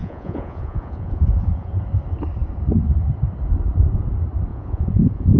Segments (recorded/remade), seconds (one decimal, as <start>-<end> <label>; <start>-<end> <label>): 0.0-1.7 remade; 1.7-4.5 recorded; 4.5-5.4 remade